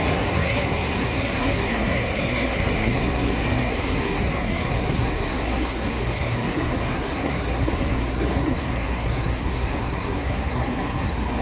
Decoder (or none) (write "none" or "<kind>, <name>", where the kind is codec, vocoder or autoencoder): codec, SNAC